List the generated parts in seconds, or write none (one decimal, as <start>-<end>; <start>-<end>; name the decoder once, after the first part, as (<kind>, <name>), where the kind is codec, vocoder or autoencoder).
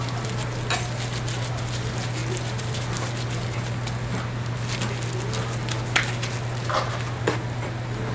none